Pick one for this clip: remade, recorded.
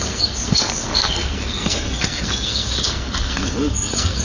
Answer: remade